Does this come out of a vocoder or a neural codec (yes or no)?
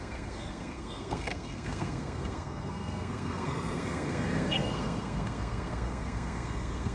yes